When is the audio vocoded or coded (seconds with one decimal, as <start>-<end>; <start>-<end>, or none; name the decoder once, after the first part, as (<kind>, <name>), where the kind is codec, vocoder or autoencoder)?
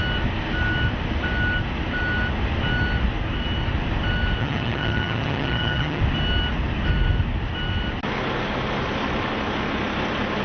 4.4-6.0 (vocoder, HiFi-GAN)